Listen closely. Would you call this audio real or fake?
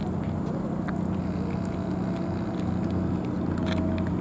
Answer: real